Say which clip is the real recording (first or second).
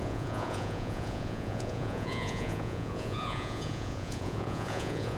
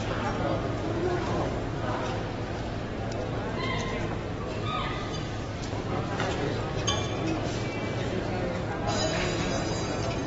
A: second